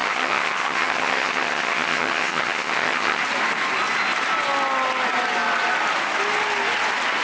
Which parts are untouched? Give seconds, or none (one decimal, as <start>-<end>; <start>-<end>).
3.2-7.2